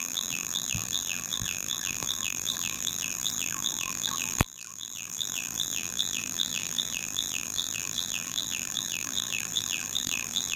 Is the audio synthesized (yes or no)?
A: yes